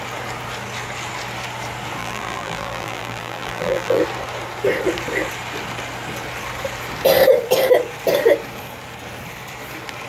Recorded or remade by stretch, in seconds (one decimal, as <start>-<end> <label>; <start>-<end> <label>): 0.0-2.0 recorded; 2.0-4.0 remade; 4.0-10.1 recorded